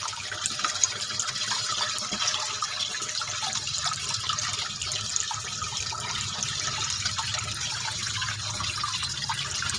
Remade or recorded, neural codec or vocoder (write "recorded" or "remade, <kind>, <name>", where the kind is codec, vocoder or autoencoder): recorded